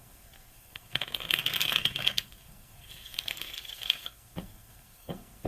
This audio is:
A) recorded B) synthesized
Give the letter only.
B